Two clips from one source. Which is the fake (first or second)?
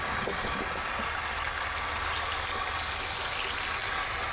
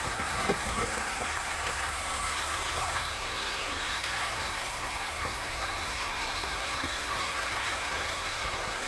second